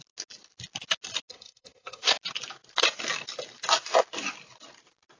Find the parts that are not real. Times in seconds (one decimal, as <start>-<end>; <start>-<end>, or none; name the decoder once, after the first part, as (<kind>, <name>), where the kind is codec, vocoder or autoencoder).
1.3-2.1 (codec, SNAC)